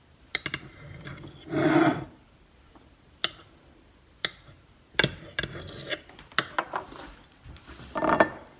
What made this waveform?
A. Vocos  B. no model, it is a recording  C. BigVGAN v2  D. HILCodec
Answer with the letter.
C